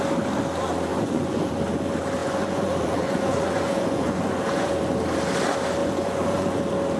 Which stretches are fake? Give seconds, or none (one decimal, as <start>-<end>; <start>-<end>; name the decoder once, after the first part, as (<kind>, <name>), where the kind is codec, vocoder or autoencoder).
0.9-1.5 (vocoder, Vocos); 2.2-4.7; 5.8-6.6